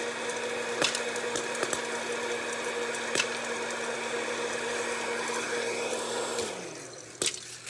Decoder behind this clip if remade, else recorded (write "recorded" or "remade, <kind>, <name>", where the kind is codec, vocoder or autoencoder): recorded